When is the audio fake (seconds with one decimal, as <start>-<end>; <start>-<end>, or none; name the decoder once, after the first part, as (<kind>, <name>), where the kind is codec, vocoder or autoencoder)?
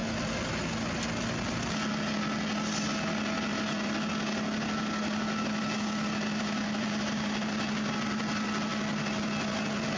none